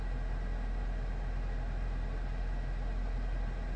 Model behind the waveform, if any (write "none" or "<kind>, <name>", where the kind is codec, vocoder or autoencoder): none